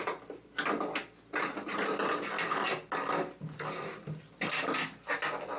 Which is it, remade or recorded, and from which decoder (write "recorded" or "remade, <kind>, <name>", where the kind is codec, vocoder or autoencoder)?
recorded